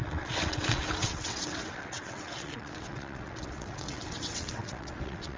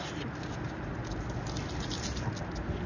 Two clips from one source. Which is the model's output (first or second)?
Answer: first